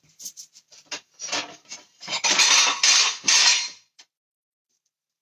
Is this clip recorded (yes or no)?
no